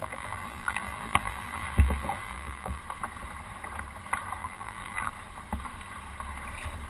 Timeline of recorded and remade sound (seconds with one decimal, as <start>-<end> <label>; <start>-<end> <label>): 0.0-2.8 remade; 2.8-4.4 recorded; 4.4-5.1 remade; 5.1-6.9 recorded